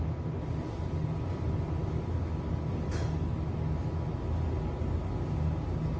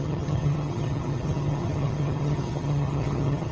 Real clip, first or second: first